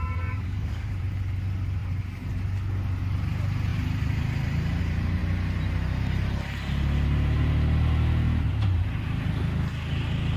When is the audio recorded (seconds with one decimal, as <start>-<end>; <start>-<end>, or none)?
1.0-10.4